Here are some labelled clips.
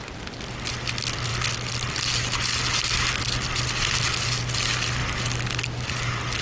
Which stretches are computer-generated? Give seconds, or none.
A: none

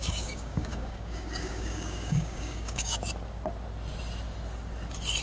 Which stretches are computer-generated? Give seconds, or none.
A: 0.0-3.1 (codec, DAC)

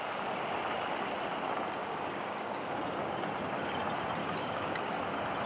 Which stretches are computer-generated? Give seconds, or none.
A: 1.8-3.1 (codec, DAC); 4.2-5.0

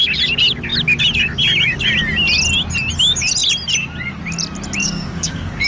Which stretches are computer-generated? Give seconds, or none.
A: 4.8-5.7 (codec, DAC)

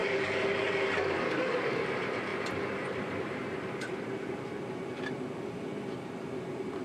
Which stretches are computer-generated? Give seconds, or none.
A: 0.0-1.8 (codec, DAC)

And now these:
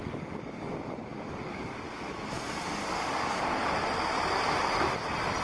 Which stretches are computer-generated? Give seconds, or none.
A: 0.0-0.7 (codec, DAC); 1.1-2.1; 2.8-3.4

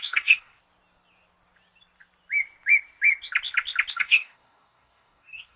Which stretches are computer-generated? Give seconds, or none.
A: 0.0-0.5 (codec, DAC); 3.9-5.6